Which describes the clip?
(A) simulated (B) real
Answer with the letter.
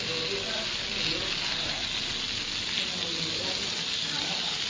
B